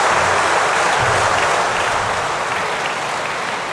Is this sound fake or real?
real